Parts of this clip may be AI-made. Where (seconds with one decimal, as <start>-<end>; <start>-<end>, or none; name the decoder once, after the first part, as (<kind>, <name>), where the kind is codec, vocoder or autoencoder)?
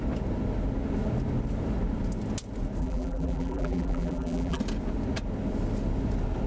2.8-4.6 (vocoder, BigVGAN v2)